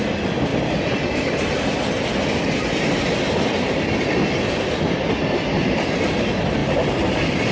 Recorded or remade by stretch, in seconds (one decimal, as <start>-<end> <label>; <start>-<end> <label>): 0.0-7.5 recorded